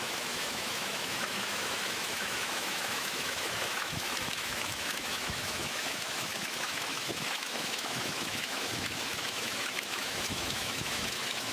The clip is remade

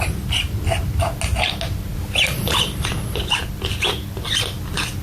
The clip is recorded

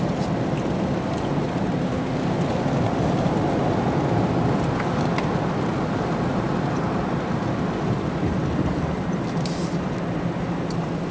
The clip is recorded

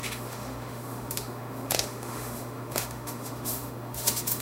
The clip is remade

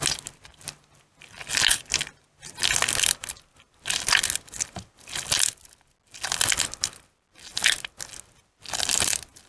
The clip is recorded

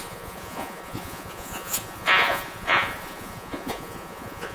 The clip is remade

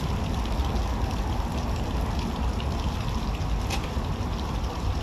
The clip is recorded